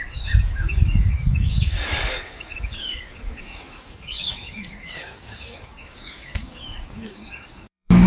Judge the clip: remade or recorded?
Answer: remade